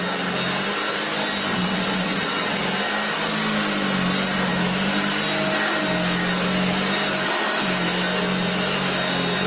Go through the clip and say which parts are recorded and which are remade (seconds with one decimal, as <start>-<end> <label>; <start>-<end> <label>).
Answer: 0.0-1.5 recorded; 1.5-2.6 remade; 2.6-9.5 recorded